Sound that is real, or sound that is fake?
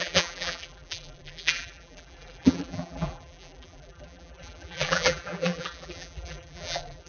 fake